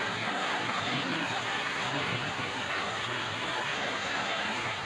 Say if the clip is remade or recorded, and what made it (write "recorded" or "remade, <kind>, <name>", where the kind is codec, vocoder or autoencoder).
remade, codec, SNAC